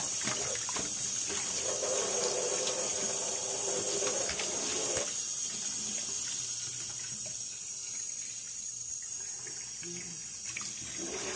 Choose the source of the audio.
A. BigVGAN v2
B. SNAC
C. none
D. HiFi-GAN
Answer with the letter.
C